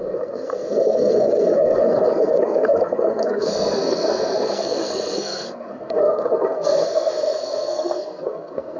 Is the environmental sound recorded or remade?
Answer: remade